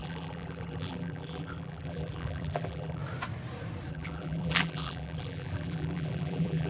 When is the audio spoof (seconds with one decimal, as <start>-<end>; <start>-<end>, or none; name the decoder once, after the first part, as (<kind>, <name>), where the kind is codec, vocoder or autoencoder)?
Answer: 0.0-3.0 (vocoder, BigVGAN v2); 3.9-6.7